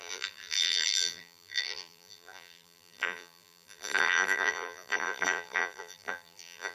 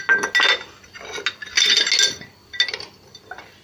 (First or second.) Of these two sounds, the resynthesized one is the first